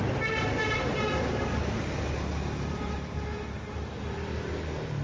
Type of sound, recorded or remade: recorded